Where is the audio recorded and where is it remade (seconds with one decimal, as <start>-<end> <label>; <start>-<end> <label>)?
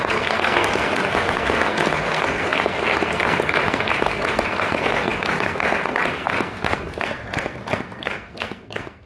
0.0-9.1 remade